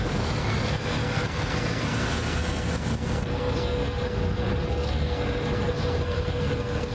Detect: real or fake fake